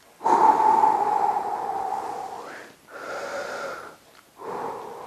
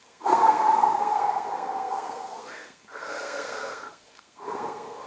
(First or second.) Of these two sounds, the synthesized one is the second